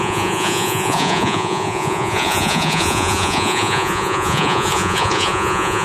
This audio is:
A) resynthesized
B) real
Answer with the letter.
A